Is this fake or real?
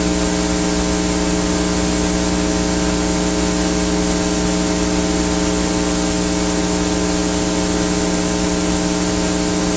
real